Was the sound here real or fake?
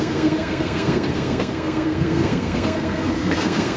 fake